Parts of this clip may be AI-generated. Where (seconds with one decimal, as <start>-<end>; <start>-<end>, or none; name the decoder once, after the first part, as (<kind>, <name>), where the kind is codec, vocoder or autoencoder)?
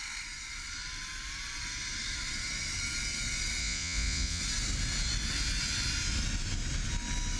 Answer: 3.6-4.4 (vocoder, Vocos)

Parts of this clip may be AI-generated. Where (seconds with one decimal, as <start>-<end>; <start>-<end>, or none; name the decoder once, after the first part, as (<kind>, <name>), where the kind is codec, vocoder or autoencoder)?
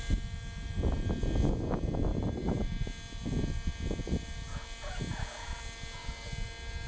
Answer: 2.1-2.7 (vocoder, BigVGAN v2)